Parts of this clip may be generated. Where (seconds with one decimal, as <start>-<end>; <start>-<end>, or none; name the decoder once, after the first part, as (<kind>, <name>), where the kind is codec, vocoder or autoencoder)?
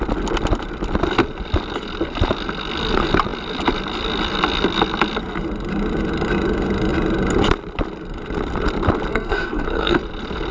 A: 9.1-10.0 (codec, SNAC)